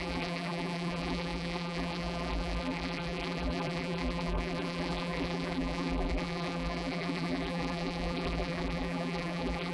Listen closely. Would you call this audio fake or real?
fake